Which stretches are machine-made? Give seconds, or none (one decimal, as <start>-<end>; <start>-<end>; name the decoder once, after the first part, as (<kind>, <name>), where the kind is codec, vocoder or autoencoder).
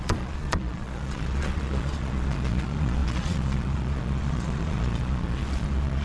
0.0-6.0 (vocoder, Vocos)